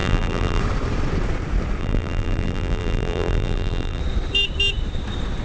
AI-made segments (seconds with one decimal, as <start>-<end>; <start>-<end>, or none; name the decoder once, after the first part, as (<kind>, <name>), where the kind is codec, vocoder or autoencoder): 0.0-0.6 (vocoder, BigVGAN v2); 1.8-4.0